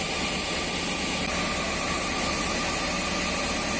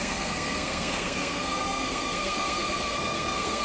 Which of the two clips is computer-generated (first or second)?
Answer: second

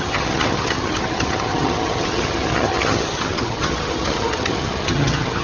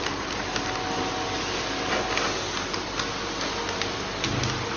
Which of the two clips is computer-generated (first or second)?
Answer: first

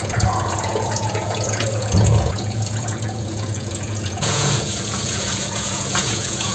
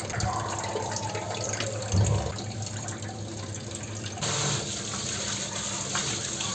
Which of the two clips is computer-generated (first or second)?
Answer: first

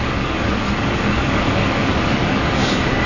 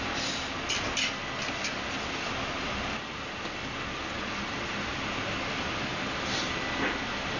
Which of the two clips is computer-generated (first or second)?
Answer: first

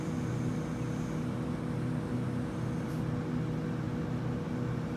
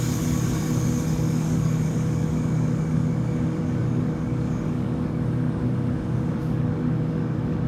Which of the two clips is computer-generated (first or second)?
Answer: second